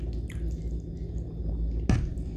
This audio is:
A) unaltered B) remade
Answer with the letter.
A